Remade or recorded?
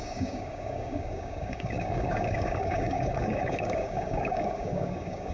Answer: remade